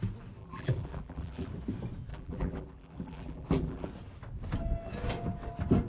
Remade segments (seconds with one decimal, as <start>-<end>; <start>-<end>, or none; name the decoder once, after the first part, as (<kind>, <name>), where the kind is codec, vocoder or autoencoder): 0.4-1.5 (vocoder, BigVGAN v2); 2.1-3.9